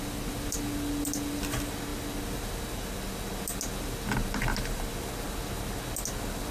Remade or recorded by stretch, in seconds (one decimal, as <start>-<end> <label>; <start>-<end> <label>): 0.0-6.5 recorded